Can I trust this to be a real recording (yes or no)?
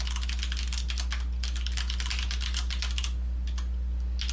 yes